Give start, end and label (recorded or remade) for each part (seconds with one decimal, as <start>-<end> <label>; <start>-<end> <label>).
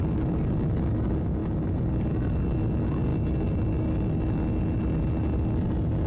0.0-6.1 recorded